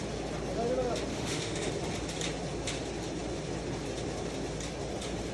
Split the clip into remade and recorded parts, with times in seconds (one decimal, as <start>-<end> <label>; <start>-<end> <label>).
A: 0.0-1.1 recorded; 1.1-1.7 remade; 1.7-5.3 recorded